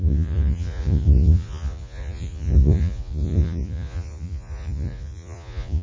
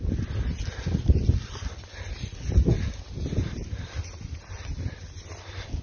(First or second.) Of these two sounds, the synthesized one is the first